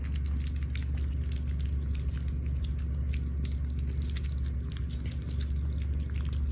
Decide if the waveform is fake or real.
real